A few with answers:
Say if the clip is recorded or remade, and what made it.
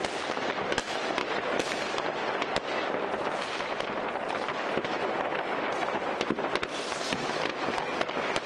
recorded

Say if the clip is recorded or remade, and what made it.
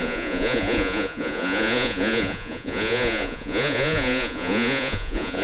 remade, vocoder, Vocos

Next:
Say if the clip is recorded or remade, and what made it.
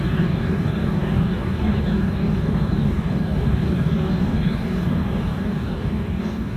remade, codec, DAC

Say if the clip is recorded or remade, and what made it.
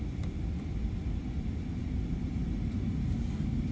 recorded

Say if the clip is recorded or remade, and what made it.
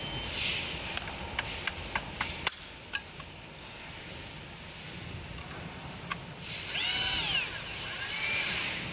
recorded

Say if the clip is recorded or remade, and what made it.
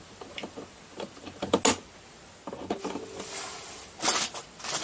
recorded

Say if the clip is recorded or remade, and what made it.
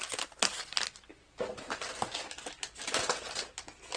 recorded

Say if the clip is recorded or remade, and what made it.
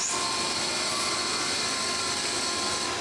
recorded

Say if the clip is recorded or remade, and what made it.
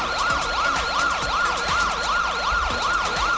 remade, vocoder, BigVGAN v2